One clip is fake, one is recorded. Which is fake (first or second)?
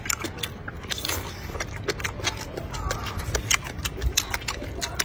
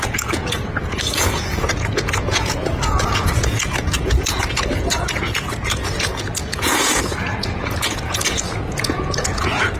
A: second